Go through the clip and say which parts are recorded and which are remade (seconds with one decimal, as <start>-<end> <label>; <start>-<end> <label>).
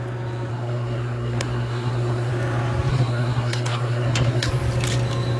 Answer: 0.0-0.5 recorded; 0.5-2.3 remade; 2.3-2.9 recorded; 2.9-4.5 remade; 4.5-5.4 recorded